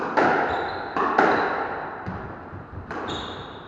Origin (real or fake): real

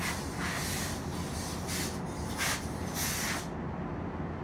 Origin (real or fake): real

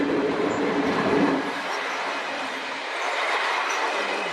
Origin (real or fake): fake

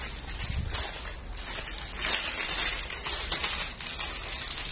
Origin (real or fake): real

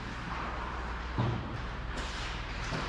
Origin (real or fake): fake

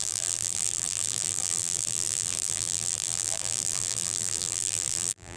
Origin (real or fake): fake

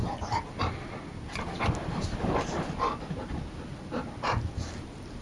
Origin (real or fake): real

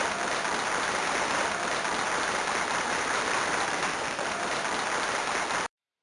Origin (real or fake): fake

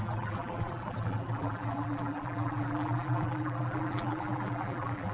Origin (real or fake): fake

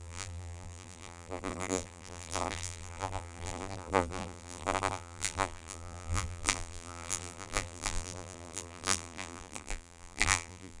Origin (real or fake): fake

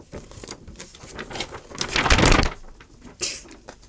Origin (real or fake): real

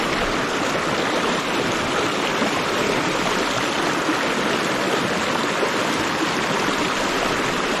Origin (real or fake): real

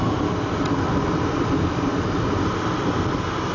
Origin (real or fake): real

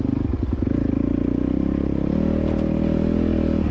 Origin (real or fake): real